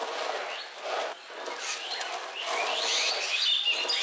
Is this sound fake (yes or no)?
no